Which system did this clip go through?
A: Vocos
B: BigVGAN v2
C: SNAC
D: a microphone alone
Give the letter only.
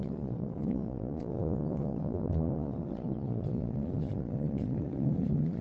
A